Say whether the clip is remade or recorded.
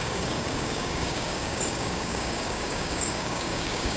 remade